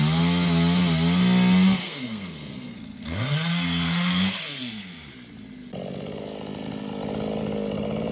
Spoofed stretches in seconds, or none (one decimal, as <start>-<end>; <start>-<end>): 1.8-5.1